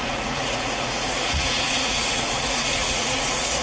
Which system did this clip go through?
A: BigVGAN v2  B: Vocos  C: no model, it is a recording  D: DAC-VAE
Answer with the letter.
B